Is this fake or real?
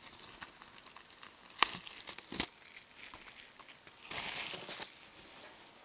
real